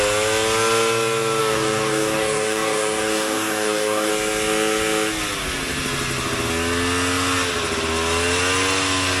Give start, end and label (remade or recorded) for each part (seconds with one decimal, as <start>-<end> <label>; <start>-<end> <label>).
0.0-1.4 recorded; 1.4-4.1 remade; 4.1-9.2 recorded

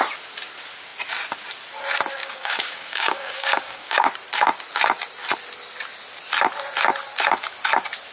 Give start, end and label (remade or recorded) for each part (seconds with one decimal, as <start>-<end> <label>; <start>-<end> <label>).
0.0-2.2 recorded; 2.2-4.1 remade; 4.1-8.1 recorded